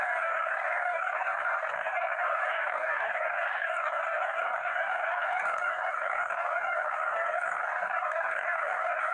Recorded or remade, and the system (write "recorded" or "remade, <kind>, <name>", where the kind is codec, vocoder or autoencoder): remade, codec, DAC